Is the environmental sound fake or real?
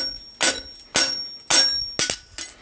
real